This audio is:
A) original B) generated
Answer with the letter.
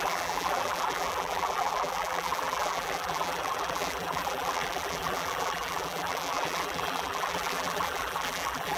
B